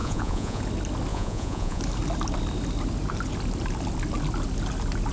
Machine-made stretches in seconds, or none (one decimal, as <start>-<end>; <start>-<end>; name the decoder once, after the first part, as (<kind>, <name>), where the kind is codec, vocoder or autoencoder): 0.0-0.6 (vocoder, Vocos); 1.1-1.8